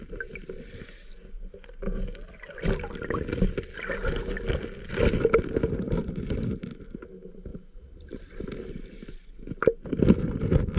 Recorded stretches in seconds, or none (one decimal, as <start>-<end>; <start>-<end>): 0.0-10.8